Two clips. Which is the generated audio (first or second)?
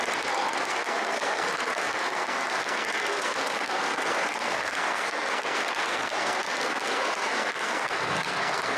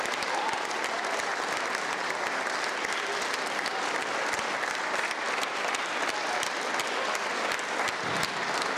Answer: first